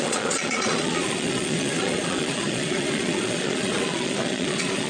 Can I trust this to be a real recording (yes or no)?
no